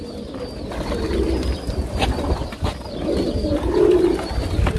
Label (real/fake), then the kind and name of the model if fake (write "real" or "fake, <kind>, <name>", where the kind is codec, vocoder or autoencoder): real